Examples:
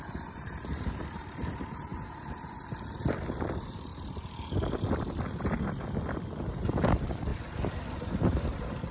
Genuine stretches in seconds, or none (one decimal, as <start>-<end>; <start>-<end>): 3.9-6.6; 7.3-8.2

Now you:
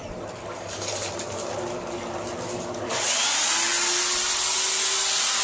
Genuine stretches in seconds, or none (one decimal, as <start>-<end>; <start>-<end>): 0.0-0.5; 1.1-5.4

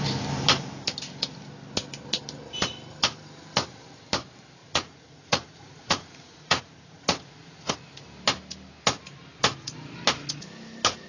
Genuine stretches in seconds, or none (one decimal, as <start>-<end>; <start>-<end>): 0.0-4.6; 7.7-11.1